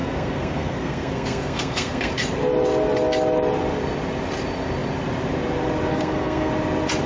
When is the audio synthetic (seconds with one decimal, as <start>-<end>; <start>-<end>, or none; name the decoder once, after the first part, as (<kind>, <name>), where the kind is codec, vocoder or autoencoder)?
0.0-2.1 (codec, SNAC); 5.9-6.5